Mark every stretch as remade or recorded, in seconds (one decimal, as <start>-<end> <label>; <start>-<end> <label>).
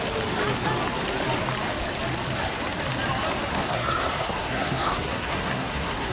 0.0-3.5 recorded; 3.5-6.1 remade